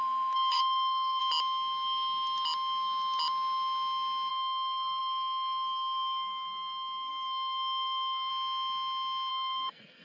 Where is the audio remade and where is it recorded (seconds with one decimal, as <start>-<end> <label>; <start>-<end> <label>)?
0.0-1.2 remade; 1.2-4.3 recorded; 4.3-8.3 remade; 8.3-9.3 recorded; 9.3-10.0 remade